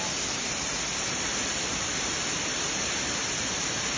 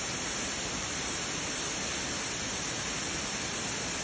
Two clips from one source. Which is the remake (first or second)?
first